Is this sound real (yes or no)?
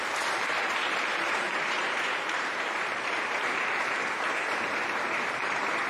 no